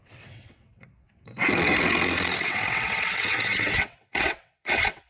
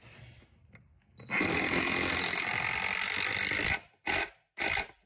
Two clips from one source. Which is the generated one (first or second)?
first